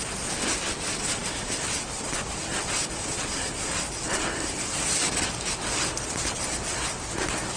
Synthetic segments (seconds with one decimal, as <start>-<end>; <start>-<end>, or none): none